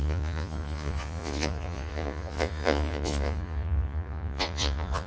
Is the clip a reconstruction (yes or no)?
yes